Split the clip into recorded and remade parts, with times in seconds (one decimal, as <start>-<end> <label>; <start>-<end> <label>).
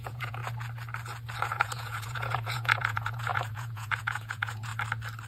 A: 0.0-0.4 remade; 0.4-1.4 recorded; 1.4-4.7 remade; 4.7-5.3 recorded